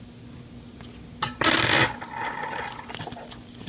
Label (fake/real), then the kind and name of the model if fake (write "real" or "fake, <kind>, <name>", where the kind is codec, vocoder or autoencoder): real